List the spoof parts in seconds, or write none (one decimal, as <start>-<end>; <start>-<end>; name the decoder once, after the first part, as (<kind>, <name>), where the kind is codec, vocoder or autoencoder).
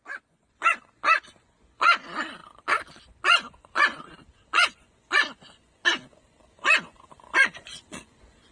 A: 0.0-8.5 (vocoder, Vocos)